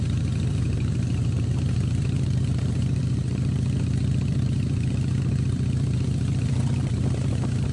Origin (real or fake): fake